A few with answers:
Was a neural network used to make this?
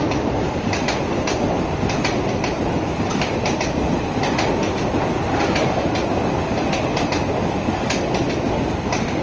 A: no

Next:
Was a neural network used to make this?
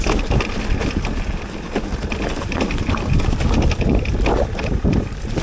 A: no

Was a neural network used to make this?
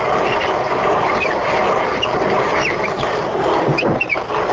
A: no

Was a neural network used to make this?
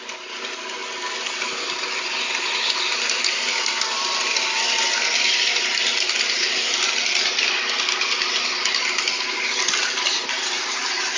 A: no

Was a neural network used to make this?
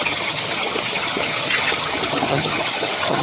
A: yes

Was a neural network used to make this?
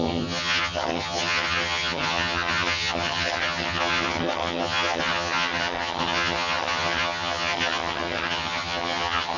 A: yes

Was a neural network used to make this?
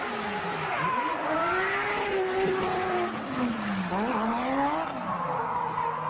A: no